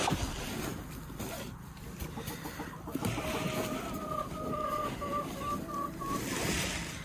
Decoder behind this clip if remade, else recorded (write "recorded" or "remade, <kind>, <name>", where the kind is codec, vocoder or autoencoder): remade, vocoder, BigVGAN v2